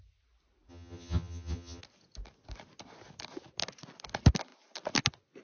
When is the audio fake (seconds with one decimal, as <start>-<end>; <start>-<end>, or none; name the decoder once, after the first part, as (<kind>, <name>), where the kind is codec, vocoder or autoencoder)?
0.7-1.8 (vocoder, HiFi-GAN)